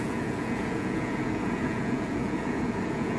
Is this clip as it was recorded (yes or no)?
no